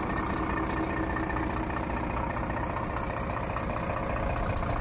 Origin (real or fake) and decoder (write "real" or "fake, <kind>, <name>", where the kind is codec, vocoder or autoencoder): real